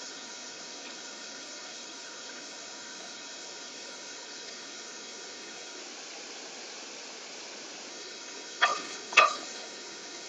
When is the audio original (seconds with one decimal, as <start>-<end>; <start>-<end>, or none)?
5.8-7.9